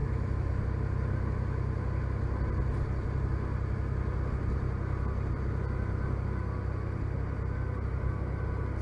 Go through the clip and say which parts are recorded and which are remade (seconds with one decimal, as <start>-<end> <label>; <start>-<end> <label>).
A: 0.0-0.6 remade; 0.6-8.8 recorded